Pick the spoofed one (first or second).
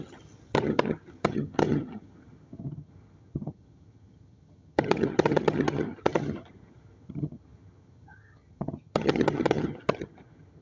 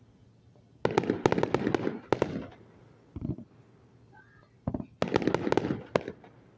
first